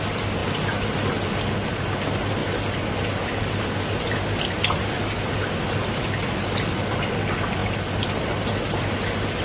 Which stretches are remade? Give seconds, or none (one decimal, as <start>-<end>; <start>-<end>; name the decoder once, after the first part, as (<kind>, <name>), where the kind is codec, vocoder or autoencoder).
none